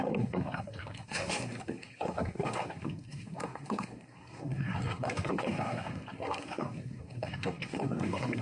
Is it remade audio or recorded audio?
remade